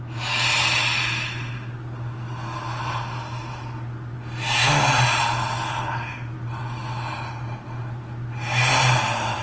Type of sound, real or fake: real